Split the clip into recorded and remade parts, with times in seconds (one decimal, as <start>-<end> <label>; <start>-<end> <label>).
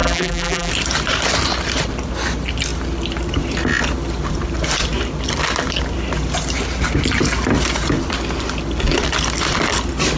0.0-0.7 remade; 0.7-10.2 recorded